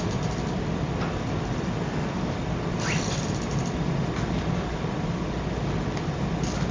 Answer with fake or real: real